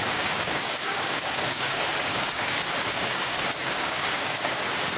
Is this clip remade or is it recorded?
remade